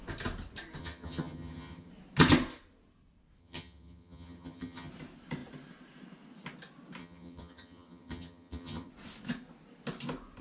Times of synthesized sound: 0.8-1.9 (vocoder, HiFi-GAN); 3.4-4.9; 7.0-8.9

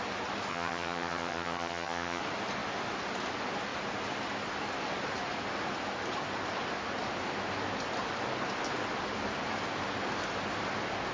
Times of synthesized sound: 0.5-2.2 (vocoder, HiFi-GAN)

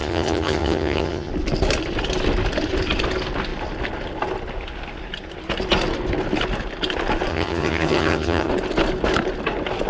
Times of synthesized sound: 0.0-1.3 (vocoder, HiFi-GAN); 7.3-8.5

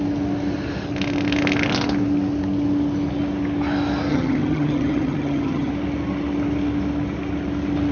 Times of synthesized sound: 4.1-5.7 (vocoder, HiFi-GAN)